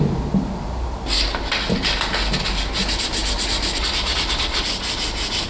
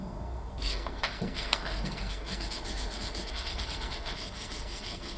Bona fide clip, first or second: first